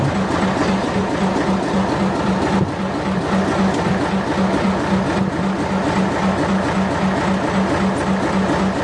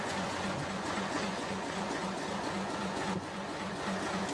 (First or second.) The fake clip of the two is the second